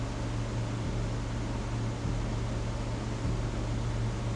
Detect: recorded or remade recorded